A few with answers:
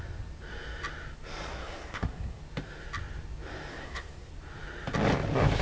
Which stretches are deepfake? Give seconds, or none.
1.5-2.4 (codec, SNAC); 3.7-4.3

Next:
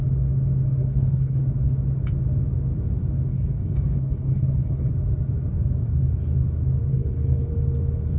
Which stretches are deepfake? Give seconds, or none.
0.8-1.4 (codec, HILCodec); 3.3-4.9; 6.9-7.5

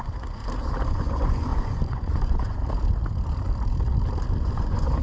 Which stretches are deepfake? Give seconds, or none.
0.0-0.4 (vocoder, Vocos); 0.9-2.6; 4.4-5.0

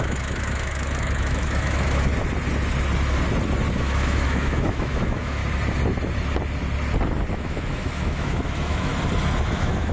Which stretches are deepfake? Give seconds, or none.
0.0-2.1 (autoencoder, DAC-VAE); 3.8-5.4; 7.3-8.9; 9.5-9.9